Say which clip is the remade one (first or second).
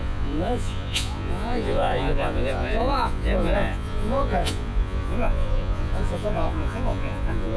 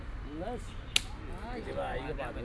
first